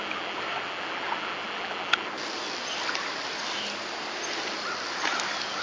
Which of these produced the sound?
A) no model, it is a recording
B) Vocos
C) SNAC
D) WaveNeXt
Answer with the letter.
A